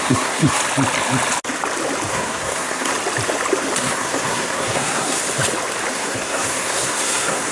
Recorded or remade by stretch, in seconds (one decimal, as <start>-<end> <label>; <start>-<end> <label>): 0.0-0.6 remade; 0.6-2.1 recorded; 2.1-2.9 remade; 2.9-3.8 recorded; 3.8-5.2 remade; 5.2-5.9 recorded; 5.9-7.5 remade